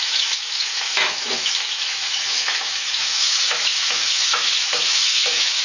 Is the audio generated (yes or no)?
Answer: yes